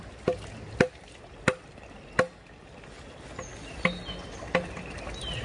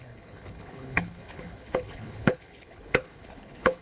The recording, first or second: first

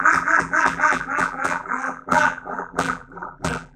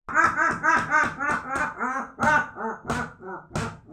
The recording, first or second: second